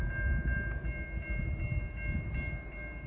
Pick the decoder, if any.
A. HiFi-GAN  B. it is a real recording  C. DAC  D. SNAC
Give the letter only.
B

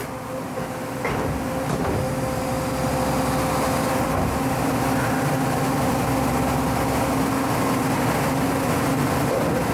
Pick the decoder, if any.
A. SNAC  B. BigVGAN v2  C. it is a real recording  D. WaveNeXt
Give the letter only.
C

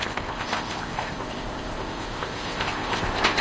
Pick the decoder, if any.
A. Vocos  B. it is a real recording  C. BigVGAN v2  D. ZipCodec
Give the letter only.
D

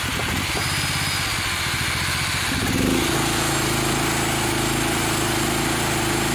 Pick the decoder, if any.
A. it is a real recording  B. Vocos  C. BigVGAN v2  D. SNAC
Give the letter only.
A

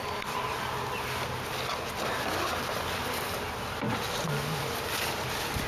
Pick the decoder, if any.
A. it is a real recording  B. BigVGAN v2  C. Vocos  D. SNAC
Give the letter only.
A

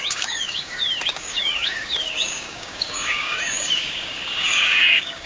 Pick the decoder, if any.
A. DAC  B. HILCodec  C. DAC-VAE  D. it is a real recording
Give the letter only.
A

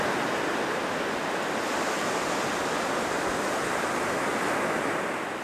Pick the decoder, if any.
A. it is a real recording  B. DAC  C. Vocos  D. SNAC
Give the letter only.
A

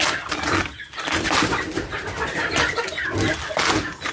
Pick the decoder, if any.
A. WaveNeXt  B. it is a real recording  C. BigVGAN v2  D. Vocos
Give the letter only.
B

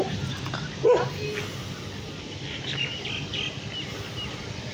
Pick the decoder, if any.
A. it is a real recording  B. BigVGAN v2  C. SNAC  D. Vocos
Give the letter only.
A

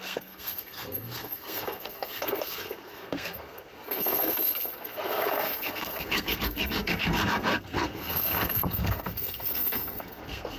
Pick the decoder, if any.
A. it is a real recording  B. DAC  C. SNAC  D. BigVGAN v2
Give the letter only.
C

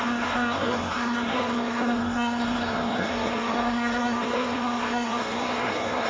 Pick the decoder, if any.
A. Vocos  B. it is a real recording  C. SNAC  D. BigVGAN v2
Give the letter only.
C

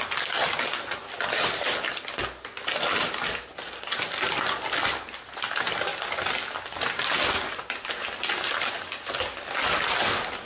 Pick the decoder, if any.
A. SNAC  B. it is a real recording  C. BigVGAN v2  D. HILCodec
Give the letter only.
B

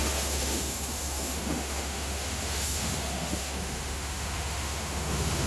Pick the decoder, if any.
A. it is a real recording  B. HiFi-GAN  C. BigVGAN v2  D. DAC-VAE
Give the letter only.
D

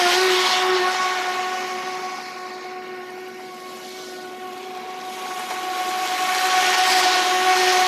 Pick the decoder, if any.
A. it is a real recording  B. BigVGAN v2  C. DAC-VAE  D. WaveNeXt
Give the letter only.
A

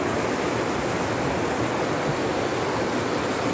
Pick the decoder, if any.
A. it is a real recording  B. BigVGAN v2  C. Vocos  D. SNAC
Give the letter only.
A